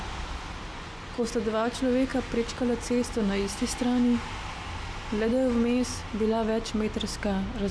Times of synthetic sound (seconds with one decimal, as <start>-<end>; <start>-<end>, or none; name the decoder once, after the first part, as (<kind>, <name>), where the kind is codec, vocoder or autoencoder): 0.7-1.3 (vocoder, Vocos)